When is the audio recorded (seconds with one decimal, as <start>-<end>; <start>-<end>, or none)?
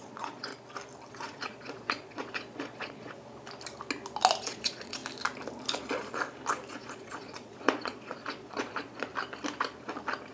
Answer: 0.5-1.1; 3.2-4.4; 5.0-6.7; 9.1-10.3